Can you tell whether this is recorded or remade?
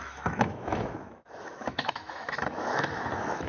remade